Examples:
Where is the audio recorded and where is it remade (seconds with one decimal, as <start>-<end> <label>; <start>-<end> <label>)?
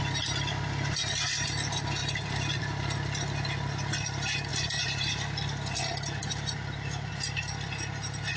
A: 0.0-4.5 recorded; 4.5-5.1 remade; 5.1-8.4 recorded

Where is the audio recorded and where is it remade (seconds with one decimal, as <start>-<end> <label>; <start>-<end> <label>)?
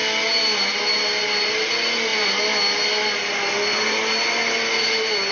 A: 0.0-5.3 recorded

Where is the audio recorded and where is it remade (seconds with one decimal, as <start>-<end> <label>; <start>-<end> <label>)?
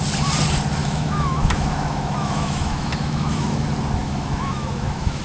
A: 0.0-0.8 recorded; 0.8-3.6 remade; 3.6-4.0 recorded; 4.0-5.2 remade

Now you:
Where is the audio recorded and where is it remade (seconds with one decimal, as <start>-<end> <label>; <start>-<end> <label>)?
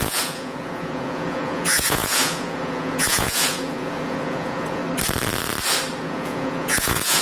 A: 0.0-4.8 remade; 4.8-6.0 recorded; 6.0-7.2 remade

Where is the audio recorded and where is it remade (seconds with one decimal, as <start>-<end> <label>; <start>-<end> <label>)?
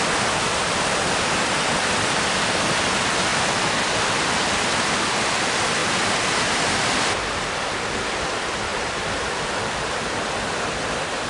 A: 0.0-11.3 recorded